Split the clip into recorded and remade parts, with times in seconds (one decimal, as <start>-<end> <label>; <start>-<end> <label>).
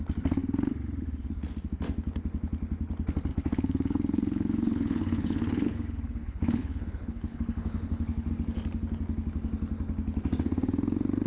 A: 0.0-3.3 recorded; 3.3-8.3 remade; 8.3-11.3 recorded